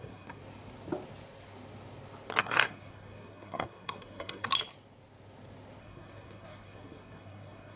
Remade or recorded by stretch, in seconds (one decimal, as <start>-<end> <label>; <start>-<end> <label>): 0.0-0.4 remade; 0.4-2.4 recorded; 2.4-4.5 remade; 4.5-5.8 recorded; 5.8-7.8 remade